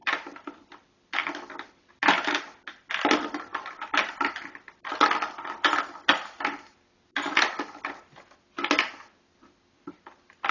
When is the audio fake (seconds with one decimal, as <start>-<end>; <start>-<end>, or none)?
0.0-1.9; 3.5-4.1